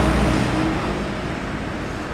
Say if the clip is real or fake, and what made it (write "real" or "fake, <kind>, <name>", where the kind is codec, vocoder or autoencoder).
real